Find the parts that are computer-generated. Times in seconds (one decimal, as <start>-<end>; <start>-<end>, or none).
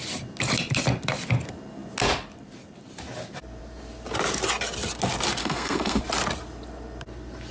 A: 5.4-6.0